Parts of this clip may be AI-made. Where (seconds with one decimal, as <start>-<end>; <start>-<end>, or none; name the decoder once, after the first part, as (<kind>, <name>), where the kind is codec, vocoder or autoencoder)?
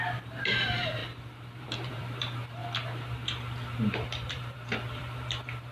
0.0-1.0 (vocoder, BigVGAN v2); 1.6-2.6; 4.3-5.7